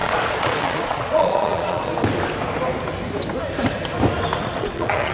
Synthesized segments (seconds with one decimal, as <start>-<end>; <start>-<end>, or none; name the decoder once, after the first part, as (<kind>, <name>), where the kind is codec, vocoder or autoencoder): 0.0-1.9 (vocoder, Vocos); 4.4-5.1